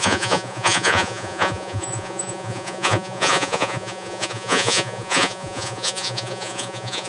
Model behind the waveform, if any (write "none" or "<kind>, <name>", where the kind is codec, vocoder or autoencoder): vocoder, Vocos